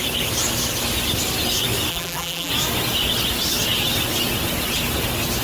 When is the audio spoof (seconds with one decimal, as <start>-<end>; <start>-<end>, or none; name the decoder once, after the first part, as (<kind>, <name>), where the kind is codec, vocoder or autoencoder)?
1.9-2.5 (vocoder, BigVGAN v2)